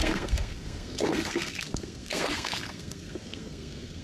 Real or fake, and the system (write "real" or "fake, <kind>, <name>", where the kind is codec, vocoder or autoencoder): fake, codec, SNAC